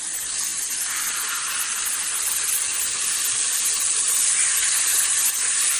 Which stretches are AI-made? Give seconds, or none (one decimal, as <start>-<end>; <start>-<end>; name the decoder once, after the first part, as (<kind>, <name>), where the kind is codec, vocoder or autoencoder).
none